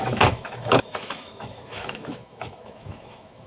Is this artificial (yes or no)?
yes